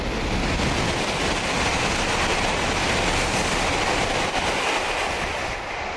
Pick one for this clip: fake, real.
real